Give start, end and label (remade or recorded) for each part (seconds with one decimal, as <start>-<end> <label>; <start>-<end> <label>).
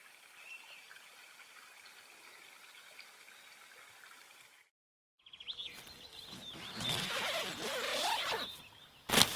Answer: 0.0-6.1 recorded; 6.1-7.2 remade; 7.2-7.9 recorded; 7.9-8.6 remade; 8.6-9.4 recorded